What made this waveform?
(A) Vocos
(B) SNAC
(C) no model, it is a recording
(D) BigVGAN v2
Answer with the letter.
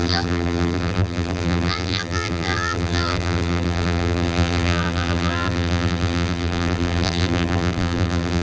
D